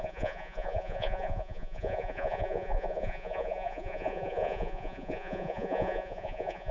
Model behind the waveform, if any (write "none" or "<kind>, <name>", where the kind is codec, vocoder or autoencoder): vocoder, Vocos